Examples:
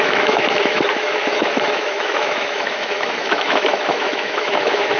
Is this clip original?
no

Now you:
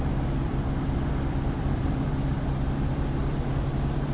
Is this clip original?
no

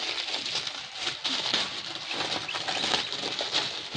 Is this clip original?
yes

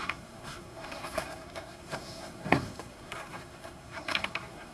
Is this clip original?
no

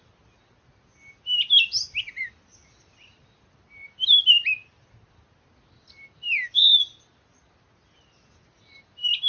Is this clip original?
yes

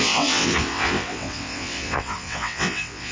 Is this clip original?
no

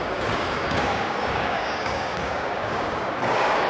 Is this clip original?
no